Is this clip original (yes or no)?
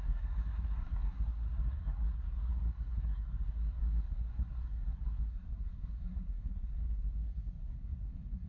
no